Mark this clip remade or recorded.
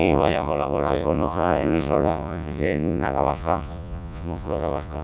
remade